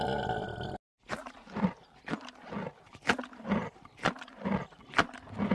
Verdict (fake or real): real